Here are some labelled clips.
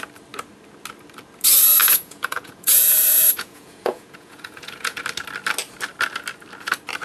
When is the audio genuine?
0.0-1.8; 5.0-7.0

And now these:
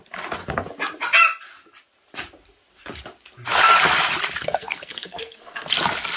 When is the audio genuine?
0.0-4.4; 5.7-6.2

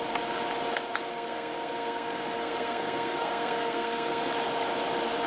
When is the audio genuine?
0.0-1.1; 4.3-5.3